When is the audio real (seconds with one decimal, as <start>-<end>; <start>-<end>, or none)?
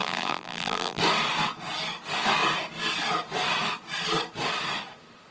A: 1.0-5.3